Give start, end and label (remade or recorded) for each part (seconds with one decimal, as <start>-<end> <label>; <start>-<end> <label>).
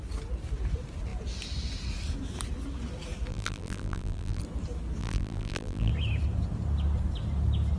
0.0-3.3 recorded; 3.3-4.4 remade; 4.4-5.0 recorded; 5.0-5.9 remade; 5.9-7.8 recorded